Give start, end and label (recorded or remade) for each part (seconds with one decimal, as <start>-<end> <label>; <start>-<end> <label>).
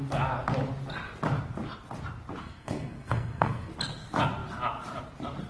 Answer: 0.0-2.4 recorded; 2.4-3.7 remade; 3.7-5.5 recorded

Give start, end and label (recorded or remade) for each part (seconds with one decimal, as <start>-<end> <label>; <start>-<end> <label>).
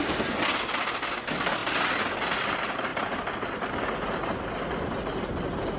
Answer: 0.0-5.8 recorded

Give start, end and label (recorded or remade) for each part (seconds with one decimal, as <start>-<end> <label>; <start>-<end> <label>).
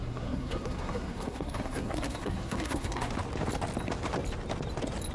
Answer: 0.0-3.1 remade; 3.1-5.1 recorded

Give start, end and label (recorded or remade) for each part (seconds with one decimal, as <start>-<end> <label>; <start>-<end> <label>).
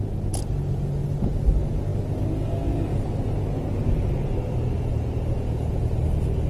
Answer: 0.0-4.9 recorded; 4.9-5.8 remade; 5.8-6.5 recorded